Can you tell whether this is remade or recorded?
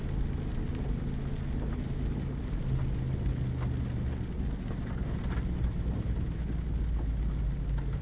recorded